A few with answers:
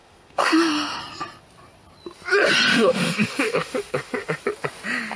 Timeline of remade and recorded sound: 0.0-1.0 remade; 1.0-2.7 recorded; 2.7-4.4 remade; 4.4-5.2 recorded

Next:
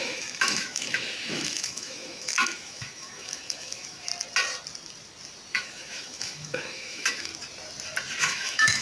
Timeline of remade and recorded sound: 0.0-4.1 remade; 4.1-5.5 recorded; 5.5-7.3 remade; 7.3-8.2 recorded; 8.2-8.8 remade

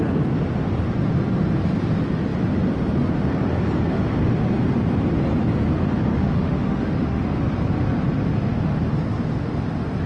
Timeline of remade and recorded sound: 0.0-6.1 recorded; 6.1-7.2 remade; 7.2-10.1 recorded